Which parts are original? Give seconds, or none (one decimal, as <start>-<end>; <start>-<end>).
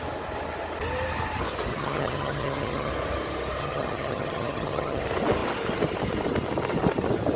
0.0-1.7; 2.9-3.6; 5.0-7.4